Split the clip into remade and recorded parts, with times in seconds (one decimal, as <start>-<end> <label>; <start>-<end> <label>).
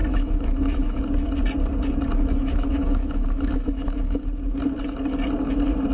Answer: 0.0-1.0 remade; 1.0-2.3 recorded; 2.3-4.2 remade; 4.2-5.9 recorded